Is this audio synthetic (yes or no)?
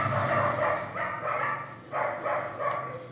no